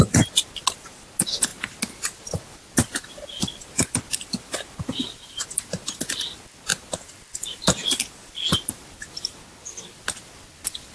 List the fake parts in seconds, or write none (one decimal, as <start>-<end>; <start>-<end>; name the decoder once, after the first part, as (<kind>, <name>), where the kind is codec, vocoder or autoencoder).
none